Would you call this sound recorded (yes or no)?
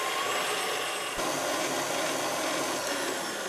yes